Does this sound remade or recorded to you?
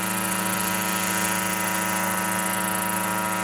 recorded